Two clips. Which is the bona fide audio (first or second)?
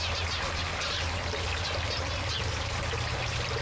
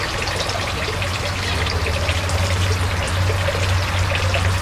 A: second